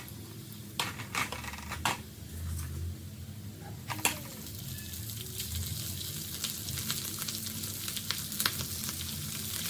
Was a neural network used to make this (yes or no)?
no